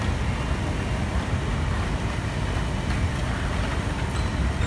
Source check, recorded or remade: recorded